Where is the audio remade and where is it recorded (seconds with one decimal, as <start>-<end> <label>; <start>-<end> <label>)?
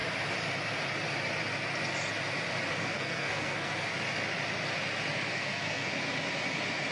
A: 0.0-2.7 recorded; 2.7-3.9 remade; 3.9-5.3 recorded; 5.3-5.9 remade; 5.9-6.9 recorded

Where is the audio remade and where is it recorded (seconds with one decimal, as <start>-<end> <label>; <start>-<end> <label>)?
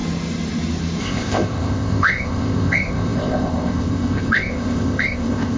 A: 0.0-1.0 recorded; 1.0-5.6 remade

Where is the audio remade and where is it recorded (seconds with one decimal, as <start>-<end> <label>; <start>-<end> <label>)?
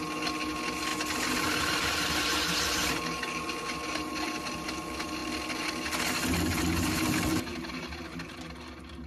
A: 0.0-9.1 recorded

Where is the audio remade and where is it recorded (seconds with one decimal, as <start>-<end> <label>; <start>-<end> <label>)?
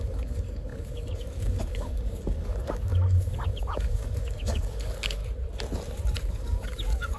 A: 0.0-5.2 remade; 5.2-6.3 recorded; 6.3-7.2 remade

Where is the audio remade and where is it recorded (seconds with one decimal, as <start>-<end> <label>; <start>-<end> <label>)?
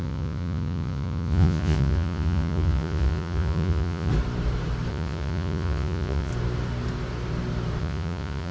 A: 0.0-4.1 remade; 4.1-4.9 recorded; 4.9-6.3 remade; 6.3-7.8 recorded; 7.8-8.5 remade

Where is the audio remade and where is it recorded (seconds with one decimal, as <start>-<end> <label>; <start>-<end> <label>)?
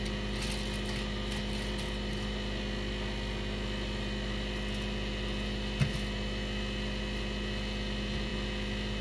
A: 0.0-9.0 recorded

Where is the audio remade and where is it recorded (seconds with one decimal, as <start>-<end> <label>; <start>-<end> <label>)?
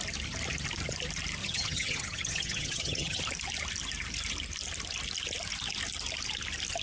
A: 0.0-1.4 recorded; 1.4-3.2 remade; 3.2-6.8 recorded